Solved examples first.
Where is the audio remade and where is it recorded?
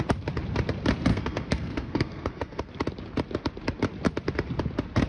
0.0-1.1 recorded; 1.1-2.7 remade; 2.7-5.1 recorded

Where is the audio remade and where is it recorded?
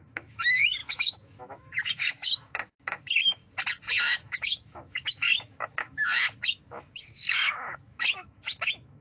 0.0-3.4 remade; 3.4-4.0 recorded; 4.0-9.0 remade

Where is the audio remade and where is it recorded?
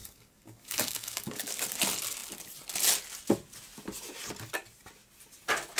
0.0-1.5 remade; 1.5-5.8 recorded